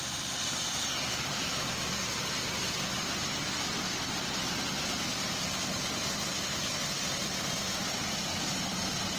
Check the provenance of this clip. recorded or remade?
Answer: recorded